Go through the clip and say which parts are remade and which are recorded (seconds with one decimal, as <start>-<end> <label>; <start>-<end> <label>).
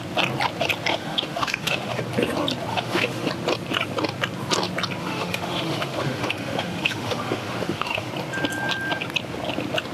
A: 0.0-0.9 recorded; 0.9-2.0 remade; 2.0-2.7 recorded; 2.7-3.3 remade; 3.3-5.0 recorded; 5.0-8.1 remade; 8.1-9.9 recorded